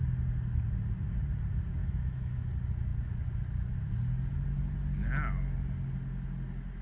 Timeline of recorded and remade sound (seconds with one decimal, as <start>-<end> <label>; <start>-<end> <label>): 0.0-1.8 recorded; 1.8-2.4 remade; 2.4-6.8 recorded